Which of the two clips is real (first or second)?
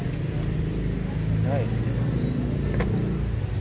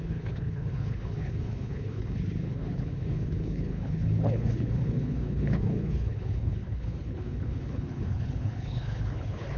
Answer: first